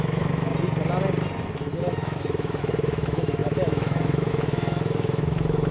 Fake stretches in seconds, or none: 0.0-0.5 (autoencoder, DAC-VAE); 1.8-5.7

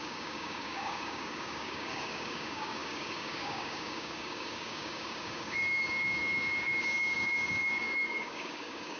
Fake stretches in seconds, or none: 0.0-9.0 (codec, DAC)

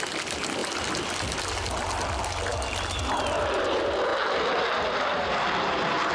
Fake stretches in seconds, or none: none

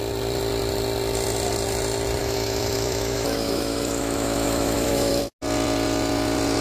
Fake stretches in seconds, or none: 2.2-5.2 (autoencoder, DAC-VAE)